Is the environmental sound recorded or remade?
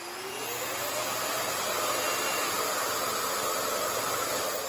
recorded